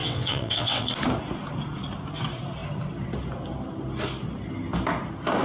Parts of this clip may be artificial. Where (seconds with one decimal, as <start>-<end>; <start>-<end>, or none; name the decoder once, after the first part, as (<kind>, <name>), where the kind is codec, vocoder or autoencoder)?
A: 0.0-0.9 (vocoder, WaveNeXt)